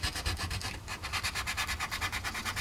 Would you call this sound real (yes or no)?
yes